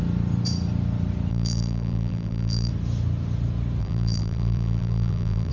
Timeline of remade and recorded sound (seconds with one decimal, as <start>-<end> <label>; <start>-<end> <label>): 0.0-1.3 recorded; 1.3-2.7 remade; 2.7-3.8 recorded; 3.8-5.5 remade